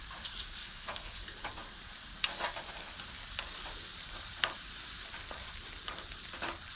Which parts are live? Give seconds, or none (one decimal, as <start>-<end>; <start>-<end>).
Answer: 0.0-0.6; 1.2-6.8